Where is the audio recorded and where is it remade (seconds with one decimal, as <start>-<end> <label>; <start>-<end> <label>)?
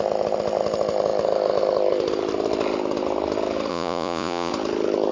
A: 0.0-3.7 recorded; 3.7-4.5 remade; 4.5-5.1 recorded